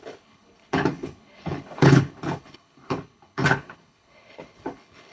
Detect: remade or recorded remade